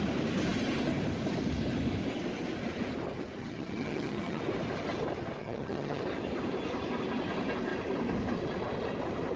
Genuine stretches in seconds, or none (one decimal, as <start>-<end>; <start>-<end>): 0.0-3.4; 4.4-5.4; 6.0-9.4